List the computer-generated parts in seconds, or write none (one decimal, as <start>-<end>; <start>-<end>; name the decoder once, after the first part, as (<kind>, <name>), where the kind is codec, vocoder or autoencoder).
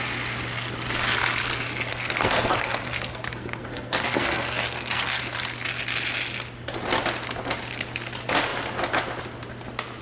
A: 1.9-5.2 (codec, SNAC)